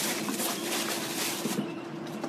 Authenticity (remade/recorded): remade